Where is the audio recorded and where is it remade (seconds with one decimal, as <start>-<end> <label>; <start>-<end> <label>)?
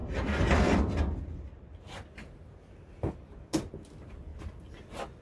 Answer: 0.0-5.2 recorded